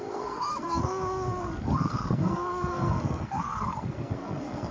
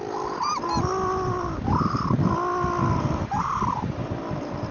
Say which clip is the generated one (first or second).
first